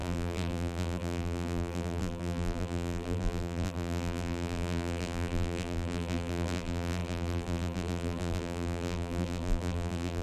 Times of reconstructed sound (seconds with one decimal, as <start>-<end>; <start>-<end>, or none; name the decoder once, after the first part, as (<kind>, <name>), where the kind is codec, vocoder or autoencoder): 0.0-10.2 (vocoder, BigVGAN v2)